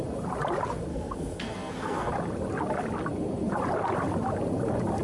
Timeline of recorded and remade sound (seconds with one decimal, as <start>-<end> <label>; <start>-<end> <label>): 0.0-0.9 recorded; 0.9-2.1 remade; 2.1-5.0 recorded